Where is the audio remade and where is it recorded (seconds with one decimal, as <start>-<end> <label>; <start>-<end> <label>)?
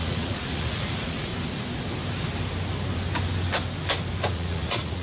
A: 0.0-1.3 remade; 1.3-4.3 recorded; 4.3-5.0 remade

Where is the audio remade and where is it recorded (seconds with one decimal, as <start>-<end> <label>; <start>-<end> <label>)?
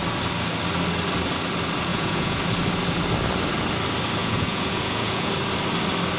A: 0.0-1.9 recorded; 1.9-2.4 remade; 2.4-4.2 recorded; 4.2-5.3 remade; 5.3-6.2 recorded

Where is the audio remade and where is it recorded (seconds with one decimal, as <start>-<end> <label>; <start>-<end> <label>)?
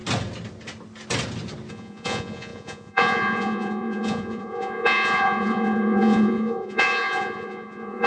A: 0.0-1.7 recorded; 1.7-8.1 remade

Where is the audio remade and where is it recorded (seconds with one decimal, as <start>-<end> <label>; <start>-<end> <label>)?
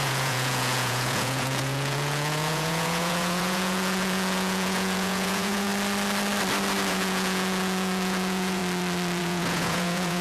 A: 0.0-5.7 remade; 5.7-6.9 recorded; 6.9-8.6 remade; 8.6-9.2 recorded; 9.2-10.2 remade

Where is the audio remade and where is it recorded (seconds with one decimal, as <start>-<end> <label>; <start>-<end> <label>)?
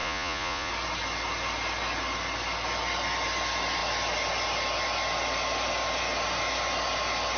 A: 0.0-0.7 remade; 0.7-7.4 recorded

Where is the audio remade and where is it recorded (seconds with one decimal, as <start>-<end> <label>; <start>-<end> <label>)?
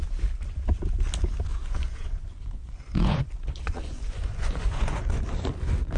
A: 0.0-1.5 recorded; 1.5-5.1 remade; 5.1-6.0 recorded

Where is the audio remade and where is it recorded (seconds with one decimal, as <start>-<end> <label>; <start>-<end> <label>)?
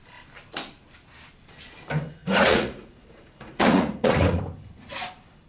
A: 0.0-2.2 recorded; 2.2-4.4 remade; 4.4-5.5 recorded